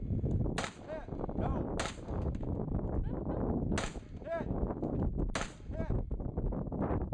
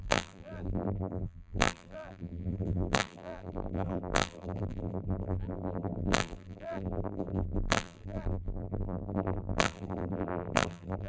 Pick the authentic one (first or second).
first